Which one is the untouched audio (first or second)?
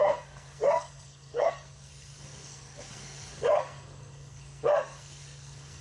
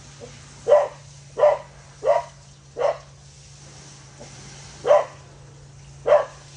second